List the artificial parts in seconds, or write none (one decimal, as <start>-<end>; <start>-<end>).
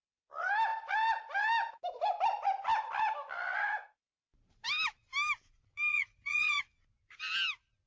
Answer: 5.9-6.6